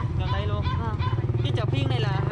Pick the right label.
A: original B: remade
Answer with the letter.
A